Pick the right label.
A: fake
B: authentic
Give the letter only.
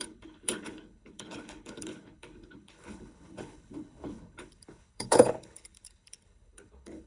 A